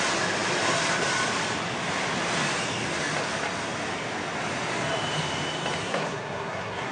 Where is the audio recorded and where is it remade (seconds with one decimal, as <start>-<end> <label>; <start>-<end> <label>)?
0.0-5.8 recorded; 5.8-6.9 remade